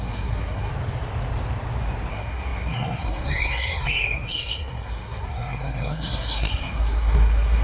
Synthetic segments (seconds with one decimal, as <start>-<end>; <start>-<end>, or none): 0.0-0.7; 2.1-7.6